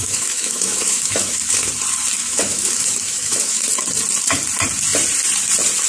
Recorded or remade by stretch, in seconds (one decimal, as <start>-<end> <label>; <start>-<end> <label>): 0.0-1.7 remade; 1.7-2.2 recorded; 2.2-3.7 remade; 3.7-5.9 recorded